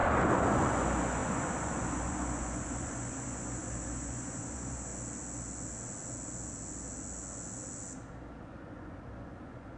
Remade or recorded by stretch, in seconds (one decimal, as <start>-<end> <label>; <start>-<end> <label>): 0.0-4.9 remade; 4.9-8.4 recorded; 8.4-9.8 remade